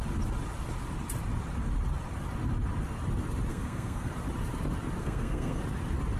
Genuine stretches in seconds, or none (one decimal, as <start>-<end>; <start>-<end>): 0.0-3.5; 4.1-5.0; 5.6-6.2